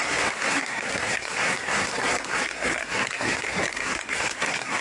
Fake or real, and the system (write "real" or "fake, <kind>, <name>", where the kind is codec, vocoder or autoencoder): fake, codec, SNAC